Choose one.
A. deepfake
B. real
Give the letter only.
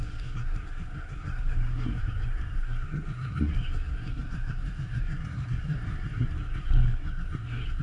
A